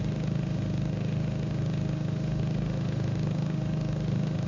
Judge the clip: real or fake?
fake